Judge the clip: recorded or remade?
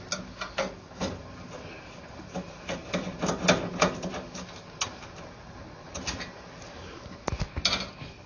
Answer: recorded